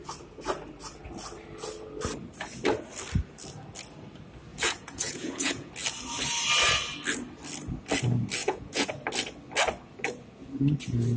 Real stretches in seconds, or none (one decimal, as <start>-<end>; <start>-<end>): 0.0-4.5; 5.7-8.4; 8.9-11.2